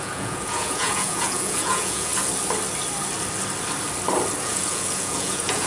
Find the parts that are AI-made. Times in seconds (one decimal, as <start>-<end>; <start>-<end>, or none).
0.0-2.1; 4.4-5.7